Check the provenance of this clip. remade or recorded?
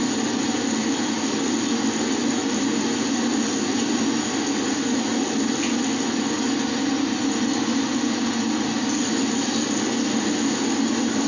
recorded